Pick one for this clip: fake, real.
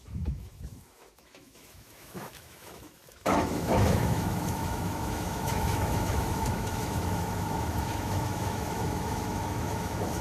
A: fake